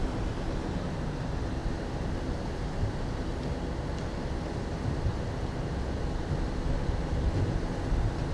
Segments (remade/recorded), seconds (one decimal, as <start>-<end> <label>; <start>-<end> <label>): 0.0-8.3 recorded